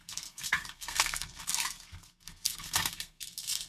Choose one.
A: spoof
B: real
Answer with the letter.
A